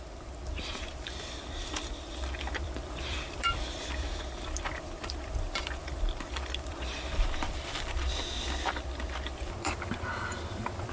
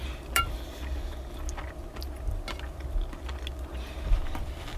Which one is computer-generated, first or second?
first